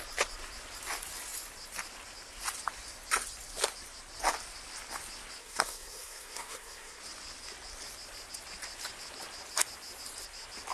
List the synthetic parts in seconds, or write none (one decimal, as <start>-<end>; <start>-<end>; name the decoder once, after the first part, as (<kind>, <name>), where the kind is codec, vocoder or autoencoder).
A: 5.4-7.0 (codec, SNAC)